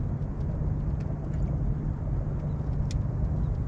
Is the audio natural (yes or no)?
yes